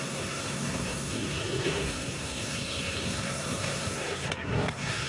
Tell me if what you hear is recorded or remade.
remade